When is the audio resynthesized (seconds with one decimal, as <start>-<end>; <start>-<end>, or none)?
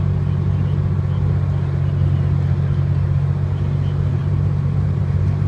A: 4.1-5.5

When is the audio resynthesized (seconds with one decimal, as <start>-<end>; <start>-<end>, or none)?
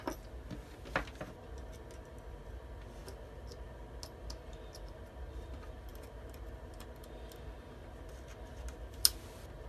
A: none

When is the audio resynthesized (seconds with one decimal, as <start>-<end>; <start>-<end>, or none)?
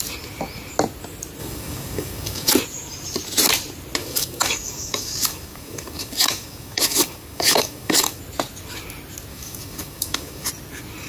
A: 1.4-2.5; 4.0-8.2; 9.3-10.5